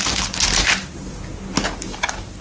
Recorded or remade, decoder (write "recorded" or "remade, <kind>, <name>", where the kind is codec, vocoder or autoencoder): recorded